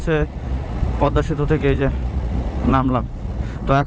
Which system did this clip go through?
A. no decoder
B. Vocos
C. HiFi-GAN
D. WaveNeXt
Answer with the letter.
B